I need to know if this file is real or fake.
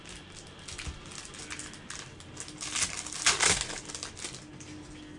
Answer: real